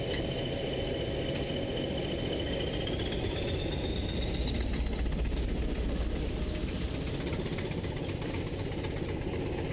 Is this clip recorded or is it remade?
recorded